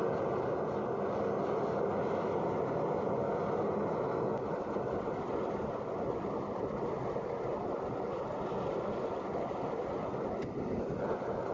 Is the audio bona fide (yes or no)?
yes